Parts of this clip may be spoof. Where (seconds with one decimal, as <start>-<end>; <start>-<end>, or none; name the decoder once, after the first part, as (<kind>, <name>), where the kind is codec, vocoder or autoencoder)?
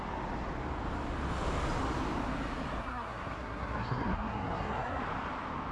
2.8-5.0 (codec, SNAC)